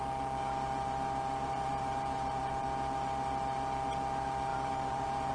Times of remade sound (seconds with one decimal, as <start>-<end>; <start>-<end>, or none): 1.4-2.5; 4.5-5.3